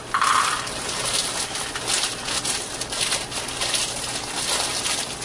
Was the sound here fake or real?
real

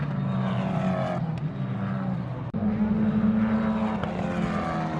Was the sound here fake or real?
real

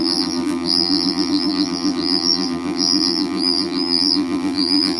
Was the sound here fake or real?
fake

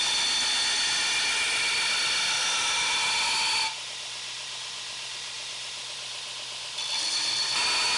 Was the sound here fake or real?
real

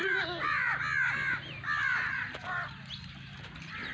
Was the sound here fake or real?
real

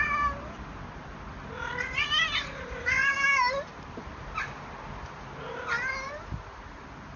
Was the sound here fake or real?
real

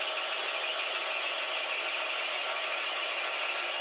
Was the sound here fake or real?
real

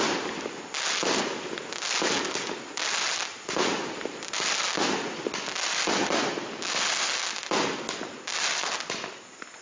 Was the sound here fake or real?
real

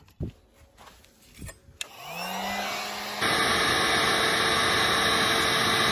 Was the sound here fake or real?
real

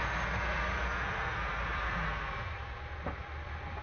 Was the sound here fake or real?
real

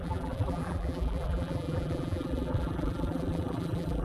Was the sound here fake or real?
fake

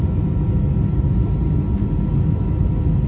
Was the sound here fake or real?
real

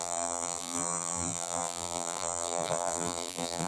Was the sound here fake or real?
fake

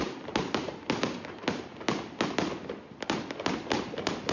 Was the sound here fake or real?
real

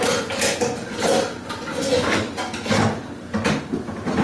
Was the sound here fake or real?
real